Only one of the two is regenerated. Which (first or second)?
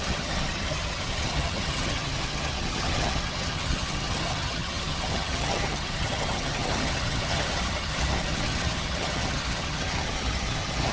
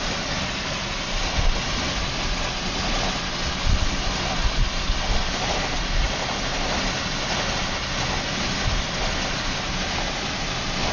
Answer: first